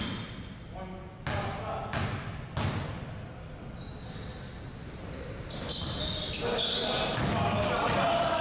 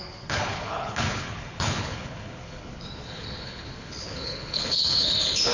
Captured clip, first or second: first